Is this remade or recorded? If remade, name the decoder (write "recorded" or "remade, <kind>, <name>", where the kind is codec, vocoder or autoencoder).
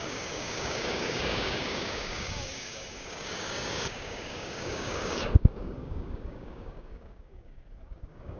remade, codec, DAC